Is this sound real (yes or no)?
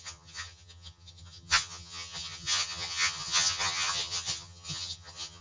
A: no